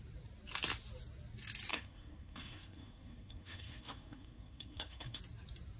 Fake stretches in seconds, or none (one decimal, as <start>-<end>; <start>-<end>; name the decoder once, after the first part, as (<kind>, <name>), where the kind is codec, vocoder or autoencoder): 1.7-5.2 (codec, SNAC)